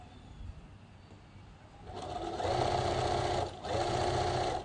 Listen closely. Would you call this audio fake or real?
real